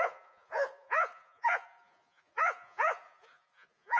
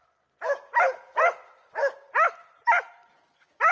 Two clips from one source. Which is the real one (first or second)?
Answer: second